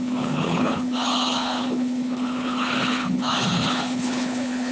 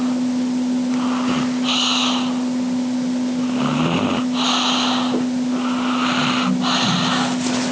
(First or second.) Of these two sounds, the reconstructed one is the first